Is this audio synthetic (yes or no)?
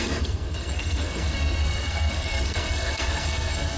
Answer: yes